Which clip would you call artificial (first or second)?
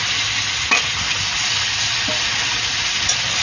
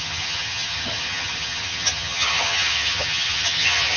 second